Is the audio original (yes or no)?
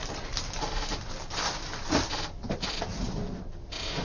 yes